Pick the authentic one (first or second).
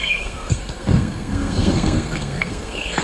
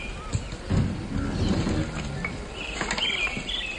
second